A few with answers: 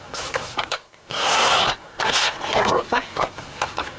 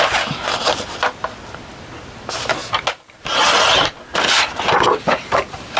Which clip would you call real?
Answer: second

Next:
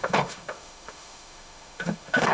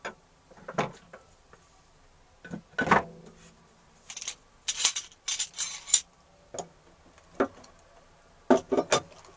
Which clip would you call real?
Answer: second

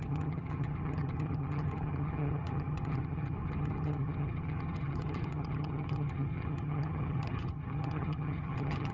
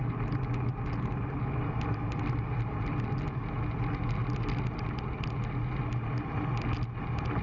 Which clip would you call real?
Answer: second